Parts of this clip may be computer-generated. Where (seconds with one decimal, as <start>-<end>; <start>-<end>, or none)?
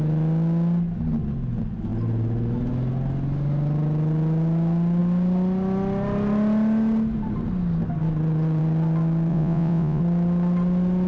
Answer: 9.3-10.0